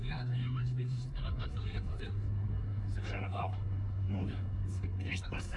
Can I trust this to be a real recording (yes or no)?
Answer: no